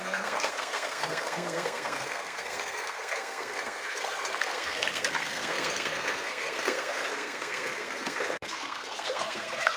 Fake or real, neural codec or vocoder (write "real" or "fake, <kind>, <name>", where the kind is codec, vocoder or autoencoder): fake, codec, SNAC